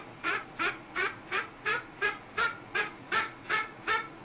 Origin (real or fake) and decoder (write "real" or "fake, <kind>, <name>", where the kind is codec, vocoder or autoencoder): fake, vocoder, Vocos